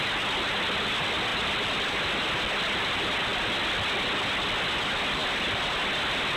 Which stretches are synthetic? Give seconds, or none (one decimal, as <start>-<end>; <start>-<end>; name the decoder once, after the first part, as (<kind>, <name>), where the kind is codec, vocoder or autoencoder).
none

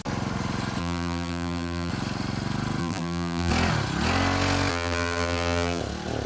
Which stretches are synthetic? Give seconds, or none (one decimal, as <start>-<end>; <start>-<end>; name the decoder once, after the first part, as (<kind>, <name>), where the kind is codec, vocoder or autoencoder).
0.8-1.9 (vocoder, BigVGAN v2); 2.8-3.5; 4.7-5.8

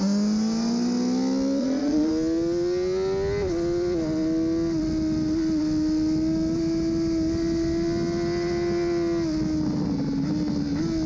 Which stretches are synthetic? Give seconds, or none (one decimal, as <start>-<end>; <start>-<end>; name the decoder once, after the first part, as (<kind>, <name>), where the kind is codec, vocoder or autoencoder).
1.6-2.1 (vocoder, Vocos)

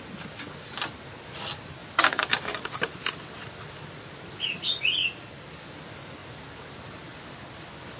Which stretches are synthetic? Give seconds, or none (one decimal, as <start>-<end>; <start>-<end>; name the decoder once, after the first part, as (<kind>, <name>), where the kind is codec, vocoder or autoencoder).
none

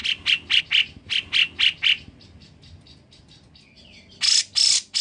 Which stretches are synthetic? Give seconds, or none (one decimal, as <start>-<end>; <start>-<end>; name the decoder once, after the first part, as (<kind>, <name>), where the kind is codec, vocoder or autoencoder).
0.0-0.6 (vocoder, BigVGAN v2)

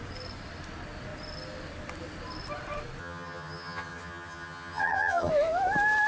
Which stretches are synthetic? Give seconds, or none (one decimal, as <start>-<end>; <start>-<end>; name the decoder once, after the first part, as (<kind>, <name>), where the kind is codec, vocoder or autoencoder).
3.0-5.3 (vocoder, HiFi-GAN)

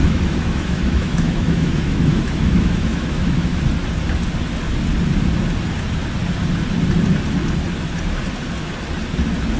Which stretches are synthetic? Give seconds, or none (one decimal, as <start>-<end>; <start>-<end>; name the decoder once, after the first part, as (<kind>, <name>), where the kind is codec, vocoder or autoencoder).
0.0-3.6 (autoencoder, DAC-VAE)

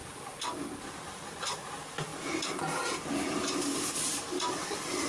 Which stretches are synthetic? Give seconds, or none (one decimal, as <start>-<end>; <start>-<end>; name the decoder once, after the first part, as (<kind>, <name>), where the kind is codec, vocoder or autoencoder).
none